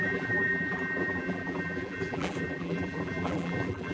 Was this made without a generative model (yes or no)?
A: no